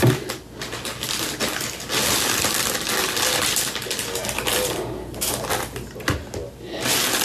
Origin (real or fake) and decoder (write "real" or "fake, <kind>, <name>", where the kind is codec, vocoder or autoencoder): real